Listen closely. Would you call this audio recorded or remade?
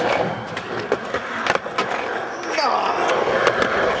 recorded